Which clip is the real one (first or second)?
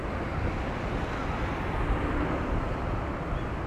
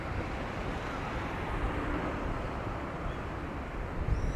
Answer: first